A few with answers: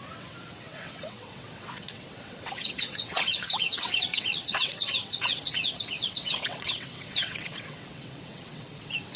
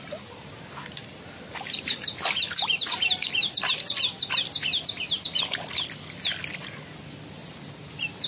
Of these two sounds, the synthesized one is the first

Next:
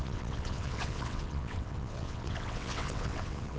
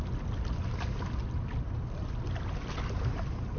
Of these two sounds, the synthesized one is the first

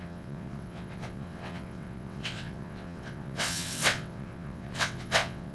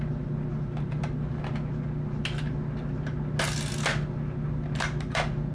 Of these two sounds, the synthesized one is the first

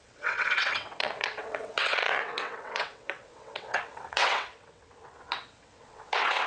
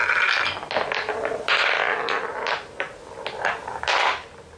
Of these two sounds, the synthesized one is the first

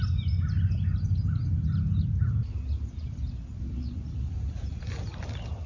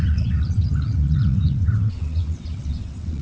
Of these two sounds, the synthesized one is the second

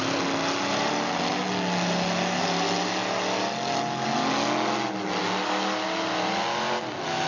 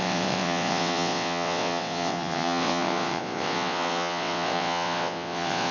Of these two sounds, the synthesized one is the second